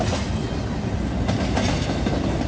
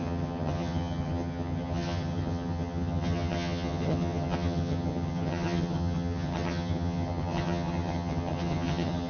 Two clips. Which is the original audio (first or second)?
first